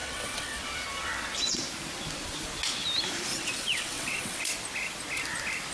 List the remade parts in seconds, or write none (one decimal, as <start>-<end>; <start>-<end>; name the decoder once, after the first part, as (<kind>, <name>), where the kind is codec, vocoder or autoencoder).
0.0-0.6 (vocoder, WaveNeXt); 3.3-4.4